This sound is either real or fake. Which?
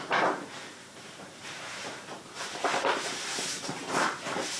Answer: fake